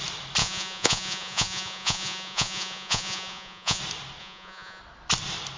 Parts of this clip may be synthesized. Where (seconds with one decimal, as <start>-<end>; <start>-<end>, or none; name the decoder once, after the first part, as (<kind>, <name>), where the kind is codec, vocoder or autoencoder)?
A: 0.4-3.8 (vocoder, Vocos); 4.2-4.8